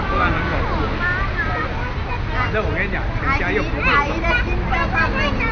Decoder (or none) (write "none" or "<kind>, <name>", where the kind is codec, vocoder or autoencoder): none